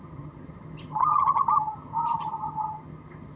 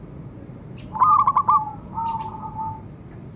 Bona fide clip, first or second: second